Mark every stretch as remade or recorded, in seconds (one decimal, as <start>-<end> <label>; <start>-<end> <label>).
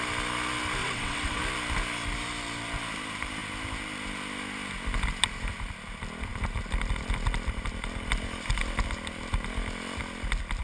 0.0-0.8 recorded; 0.8-1.4 remade; 1.4-10.6 recorded